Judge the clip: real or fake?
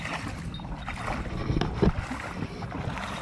real